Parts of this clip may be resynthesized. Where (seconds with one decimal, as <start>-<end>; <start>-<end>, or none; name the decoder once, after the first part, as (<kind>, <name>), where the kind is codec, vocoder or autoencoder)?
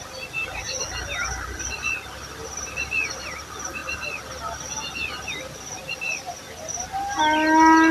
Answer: 2.4-3.2 (vocoder, BigVGAN v2); 3.8-4.7; 5.8-6.4